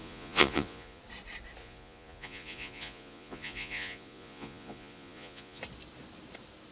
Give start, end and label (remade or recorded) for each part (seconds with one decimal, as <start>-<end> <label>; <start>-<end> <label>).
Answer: 0.0-1.0 remade; 1.0-1.6 recorded; 1.6-5.6 remade; 5.6-6.7 recorded